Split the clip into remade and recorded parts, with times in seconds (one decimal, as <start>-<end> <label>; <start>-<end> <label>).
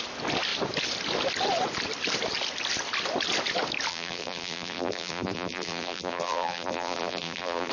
0.0-3.9 recorded; 3.9-7.7 remade